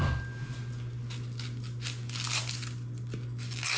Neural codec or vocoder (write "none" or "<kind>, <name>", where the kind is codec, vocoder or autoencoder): none